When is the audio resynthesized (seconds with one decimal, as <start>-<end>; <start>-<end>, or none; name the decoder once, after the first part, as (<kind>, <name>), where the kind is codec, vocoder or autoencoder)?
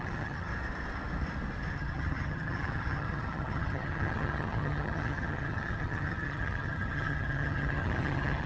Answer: 0.0-0.5 (vocoder, HiFi-GAN); 1.7-8.5